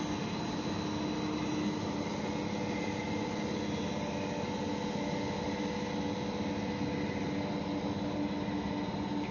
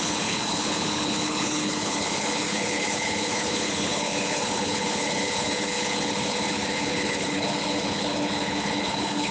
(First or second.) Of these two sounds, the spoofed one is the second